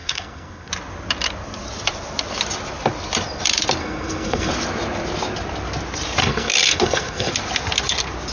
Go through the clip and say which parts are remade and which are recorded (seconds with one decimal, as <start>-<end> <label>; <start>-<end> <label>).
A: 0.0-0.7 remade; 0.7-3.8 recorded; 3.8-4.5 remade; 4.5-6.2 recorded; 6.2-7.3 remade; 7.3-8.3 recorded